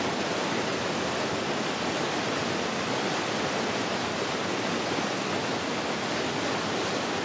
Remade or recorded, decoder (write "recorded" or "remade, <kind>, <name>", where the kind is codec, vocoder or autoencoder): recorded